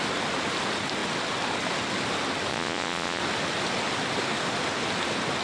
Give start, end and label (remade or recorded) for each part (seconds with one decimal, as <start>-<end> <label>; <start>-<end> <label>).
0.0-2.5 recorded; 2.5-3.2 remade; 3.2-5.4 recorded